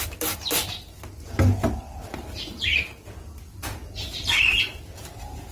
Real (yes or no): yes